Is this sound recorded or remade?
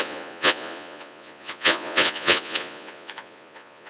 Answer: remade